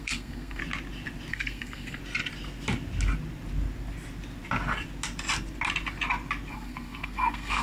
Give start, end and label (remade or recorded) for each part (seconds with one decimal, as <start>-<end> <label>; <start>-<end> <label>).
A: 0.0-0.6 remade; 0.6-1.3 recorded; 1.3-2.0 remade; 2.0-6.5 recorded; 6.5-7.6 remade